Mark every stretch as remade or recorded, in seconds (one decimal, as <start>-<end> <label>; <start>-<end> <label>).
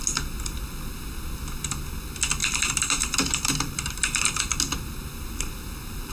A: 0.0-2.4 recorded; 2.4-4.4 remade; 4.4-6.1 recorded